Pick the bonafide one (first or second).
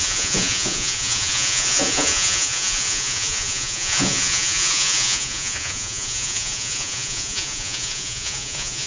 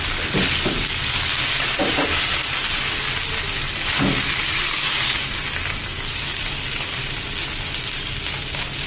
second